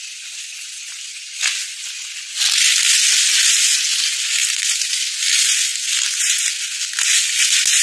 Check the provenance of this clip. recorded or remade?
recorded